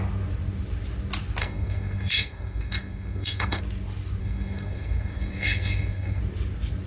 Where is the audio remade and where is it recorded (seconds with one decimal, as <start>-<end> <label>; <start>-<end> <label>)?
0.0-1.4 recorded; 1.4-3.6 remade; 3.6-4.2 recorded; 4.2-6.2 remade; 6.2-6.9 recorded